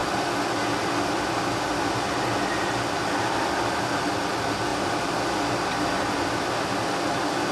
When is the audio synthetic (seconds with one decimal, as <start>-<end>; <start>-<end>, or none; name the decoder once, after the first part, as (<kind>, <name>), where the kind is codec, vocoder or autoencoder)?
none